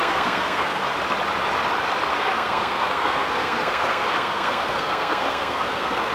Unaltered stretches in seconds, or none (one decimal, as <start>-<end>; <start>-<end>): 0.8-2.1